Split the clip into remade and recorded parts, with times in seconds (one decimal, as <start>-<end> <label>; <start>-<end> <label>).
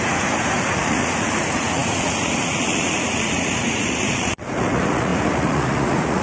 0.0-6.2 remade